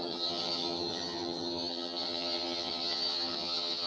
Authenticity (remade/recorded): remade